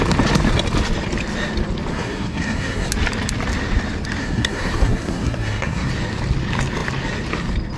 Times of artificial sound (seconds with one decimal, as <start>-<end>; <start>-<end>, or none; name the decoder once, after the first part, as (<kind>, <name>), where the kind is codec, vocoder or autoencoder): 1.9-2.9 (codec, SNAC); 4.2-5.9